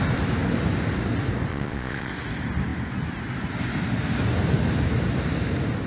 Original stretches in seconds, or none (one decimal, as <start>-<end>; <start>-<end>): 0.0-1.5; 2.1-5.9